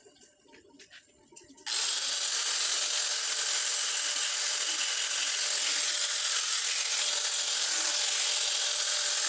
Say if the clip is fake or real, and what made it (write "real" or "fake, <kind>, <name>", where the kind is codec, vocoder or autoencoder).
real